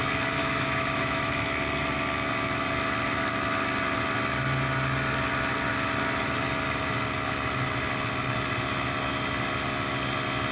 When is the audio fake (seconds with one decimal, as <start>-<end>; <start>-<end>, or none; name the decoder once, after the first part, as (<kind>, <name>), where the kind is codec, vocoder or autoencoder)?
0.4-1.3 (autoencoder, DAC-VAE)